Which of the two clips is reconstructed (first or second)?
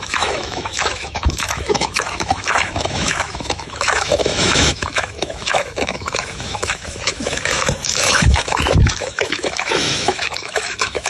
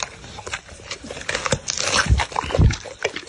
first